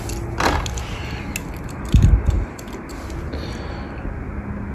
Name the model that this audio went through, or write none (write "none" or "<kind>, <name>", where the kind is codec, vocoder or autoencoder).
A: none